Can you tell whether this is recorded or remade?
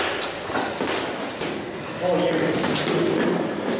recorded